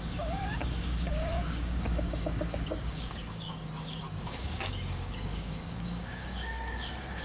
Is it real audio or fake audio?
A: fake